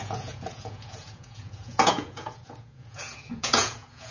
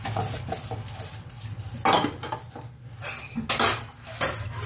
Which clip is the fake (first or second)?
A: first